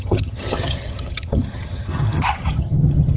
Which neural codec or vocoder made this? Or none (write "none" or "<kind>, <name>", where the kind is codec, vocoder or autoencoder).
vocoder, HiFi-GAN